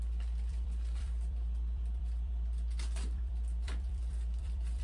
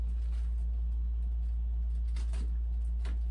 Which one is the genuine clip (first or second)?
second